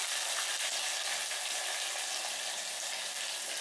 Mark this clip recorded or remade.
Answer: recorded